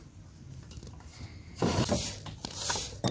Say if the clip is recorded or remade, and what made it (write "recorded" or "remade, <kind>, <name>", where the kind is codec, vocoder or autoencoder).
recorded